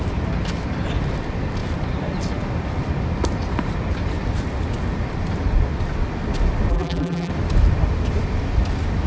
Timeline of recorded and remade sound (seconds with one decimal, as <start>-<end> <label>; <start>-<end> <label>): 0.0-6.7 recorded; 6.7-7.3 remade; 7.3-9.1 recorded